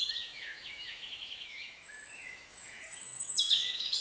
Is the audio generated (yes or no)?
yes